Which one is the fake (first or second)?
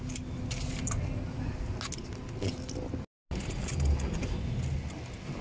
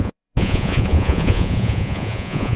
second